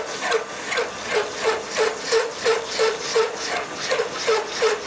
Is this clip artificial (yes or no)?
no